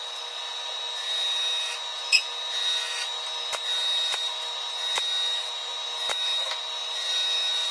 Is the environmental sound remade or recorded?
recorded